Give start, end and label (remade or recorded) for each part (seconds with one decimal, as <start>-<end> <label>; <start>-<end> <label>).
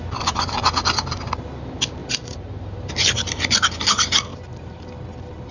0.0-2.0 recorded; 2.0-2.9 remade; 2.9-4.3 recorded; 4.3-4.8 remade; 4.8-5.5 recorded